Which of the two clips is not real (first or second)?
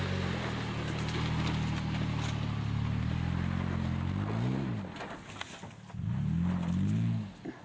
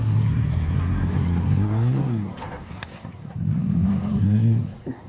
second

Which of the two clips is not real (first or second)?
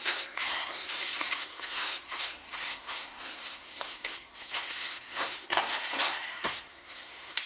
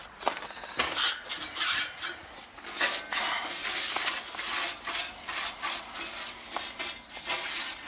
first